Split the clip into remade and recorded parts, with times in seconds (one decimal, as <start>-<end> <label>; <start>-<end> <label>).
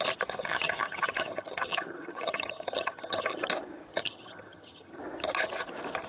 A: 0.0-0.4 recorded; 0.4-3.5 remade; 3.5-3.9 recorded; 3.9-5.0 remade; 5.0-6.1 recorded